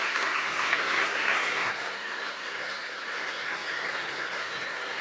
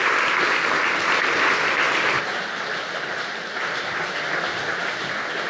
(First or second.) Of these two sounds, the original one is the second